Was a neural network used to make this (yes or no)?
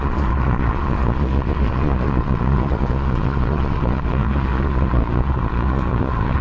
yes